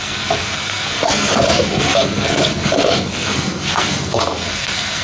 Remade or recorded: remade